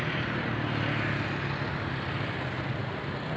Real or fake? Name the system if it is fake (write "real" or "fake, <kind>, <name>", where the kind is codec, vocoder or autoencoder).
real